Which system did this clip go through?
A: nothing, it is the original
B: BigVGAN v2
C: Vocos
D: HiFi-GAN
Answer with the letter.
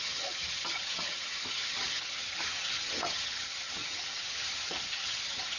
D